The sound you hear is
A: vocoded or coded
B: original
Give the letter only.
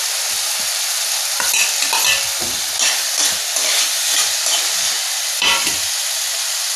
B